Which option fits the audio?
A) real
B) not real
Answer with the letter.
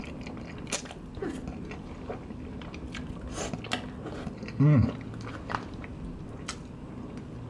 A